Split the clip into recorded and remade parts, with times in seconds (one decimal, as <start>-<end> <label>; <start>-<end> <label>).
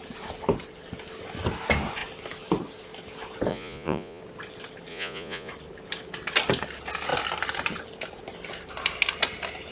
0.0-3.5 recorded; 3.5-4.2 remade; 4.2-4.9 recorded; 4.9-5.5 remade; 5.5-9.7 recorded